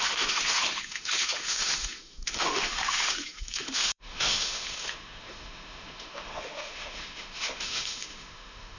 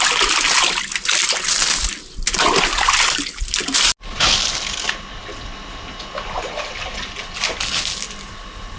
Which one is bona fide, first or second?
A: second